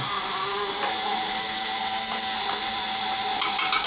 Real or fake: real